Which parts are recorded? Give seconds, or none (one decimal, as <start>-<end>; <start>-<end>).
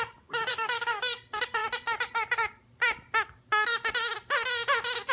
0.0-0.5; 1.0-5.1